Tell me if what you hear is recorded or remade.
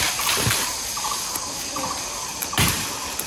recorded